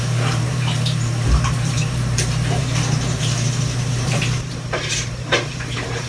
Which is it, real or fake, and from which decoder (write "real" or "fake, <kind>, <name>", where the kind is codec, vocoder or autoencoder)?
fake, vocoder, BigVGAN v2